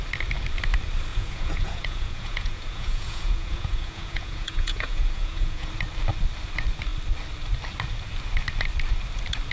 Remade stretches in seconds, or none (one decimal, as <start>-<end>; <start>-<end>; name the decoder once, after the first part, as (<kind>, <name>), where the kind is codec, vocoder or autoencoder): 1.1-5.7 (vocoder, Vocos)